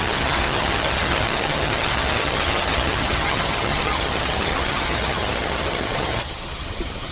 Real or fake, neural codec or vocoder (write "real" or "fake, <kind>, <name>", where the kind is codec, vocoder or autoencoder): fake, vocoder, HiFi-GAN